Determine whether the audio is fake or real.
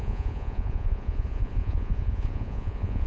fake